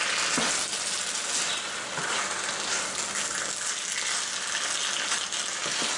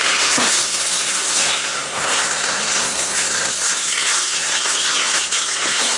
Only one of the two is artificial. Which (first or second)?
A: second